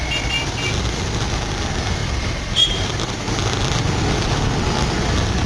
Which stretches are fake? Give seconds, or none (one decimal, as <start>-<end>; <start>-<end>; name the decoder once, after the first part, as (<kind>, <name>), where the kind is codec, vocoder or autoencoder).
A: 2.0-3.2 (vocoder, BigVGAN v2)